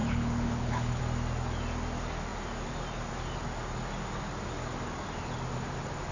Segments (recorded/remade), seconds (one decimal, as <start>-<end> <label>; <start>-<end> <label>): 0.0-1.0 remade; 1.0-6.1 recorded